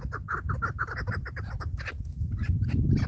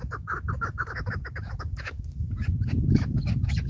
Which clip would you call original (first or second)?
first